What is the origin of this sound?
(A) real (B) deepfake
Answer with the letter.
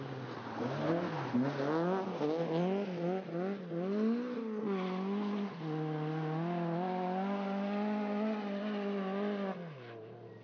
A